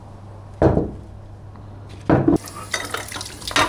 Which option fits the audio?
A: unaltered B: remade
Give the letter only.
A